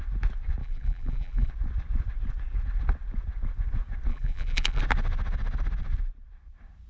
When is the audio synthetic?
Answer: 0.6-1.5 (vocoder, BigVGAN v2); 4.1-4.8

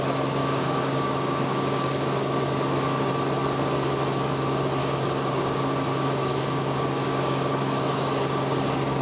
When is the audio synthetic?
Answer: 0.4-3.1 (codec, DAC); 4.8-9.0